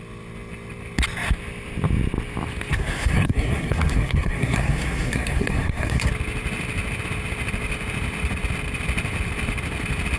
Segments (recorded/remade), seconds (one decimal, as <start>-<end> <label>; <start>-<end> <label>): 0.0-2.7 recorded; 2.7-6.1 remade; 6.1-10.2 recorded